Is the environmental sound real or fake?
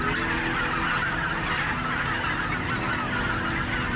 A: real